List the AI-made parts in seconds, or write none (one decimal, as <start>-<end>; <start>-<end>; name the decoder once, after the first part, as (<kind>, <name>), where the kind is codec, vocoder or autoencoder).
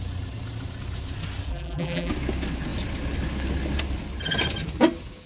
1.5-2.1 (vocoder, BigVGAN v2)